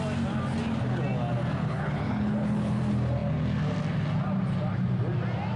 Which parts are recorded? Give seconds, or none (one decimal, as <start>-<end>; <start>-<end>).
0.0-1.6; 2.8-5.6